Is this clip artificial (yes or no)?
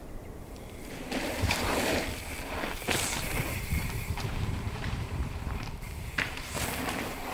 yes